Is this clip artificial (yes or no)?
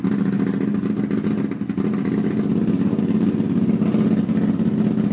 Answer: no